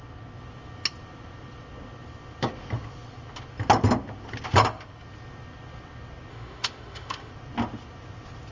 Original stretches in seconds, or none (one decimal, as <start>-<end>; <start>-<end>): 0.0-6.3; 7.3-8.5